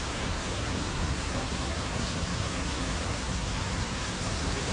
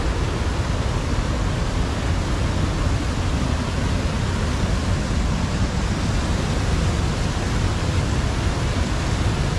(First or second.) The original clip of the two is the second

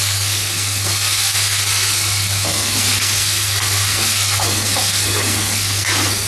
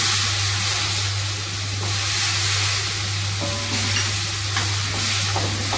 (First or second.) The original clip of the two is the second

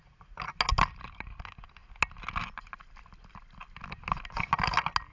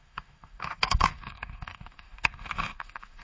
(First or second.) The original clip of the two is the first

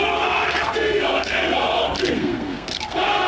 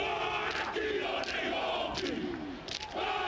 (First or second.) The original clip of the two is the second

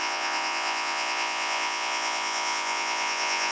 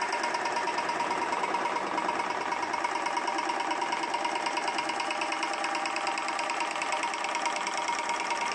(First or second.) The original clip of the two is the second